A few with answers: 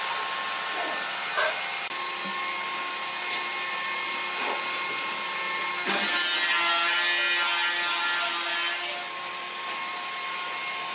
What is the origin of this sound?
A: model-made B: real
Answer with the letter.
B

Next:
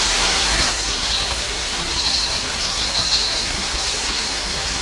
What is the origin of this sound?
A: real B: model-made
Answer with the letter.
B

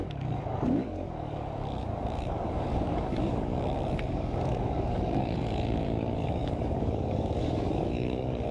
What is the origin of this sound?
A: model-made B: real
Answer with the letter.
A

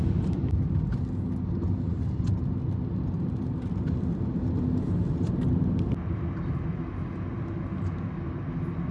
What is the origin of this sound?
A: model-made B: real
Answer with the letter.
B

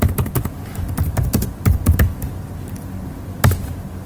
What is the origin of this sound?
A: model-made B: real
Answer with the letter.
B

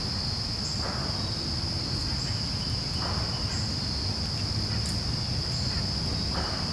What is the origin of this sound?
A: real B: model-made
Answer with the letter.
A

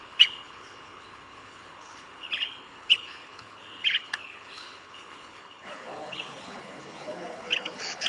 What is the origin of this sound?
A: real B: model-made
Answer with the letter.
B